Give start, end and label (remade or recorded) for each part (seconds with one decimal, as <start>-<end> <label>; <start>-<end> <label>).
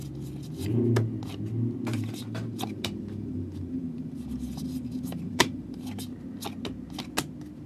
0.0-1.9 recorded; 1.9-5.9 remade; 5.9-7.7 recorded